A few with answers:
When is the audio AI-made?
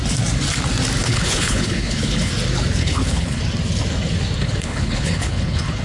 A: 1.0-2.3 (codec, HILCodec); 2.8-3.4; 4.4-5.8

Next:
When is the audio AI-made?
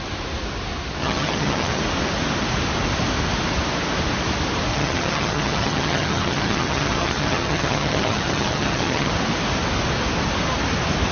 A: 1.0-1.8 (vocoder, HiFi-GAN); 4.7-9.1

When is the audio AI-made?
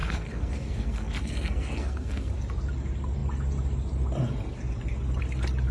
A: 0.0-2.3 (codec, SNAC)